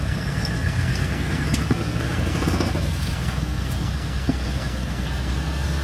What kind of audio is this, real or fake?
fake